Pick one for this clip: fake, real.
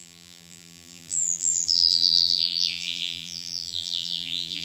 fake